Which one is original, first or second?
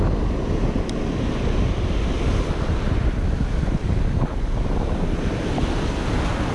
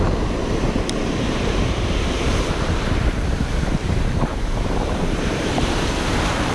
first